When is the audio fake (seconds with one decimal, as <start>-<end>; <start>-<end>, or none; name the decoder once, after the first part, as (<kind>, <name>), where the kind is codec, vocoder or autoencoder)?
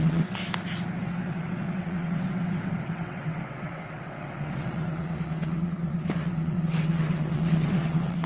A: 0.0-0.4 (vocoder, WaveNeXt); 1.0-8.3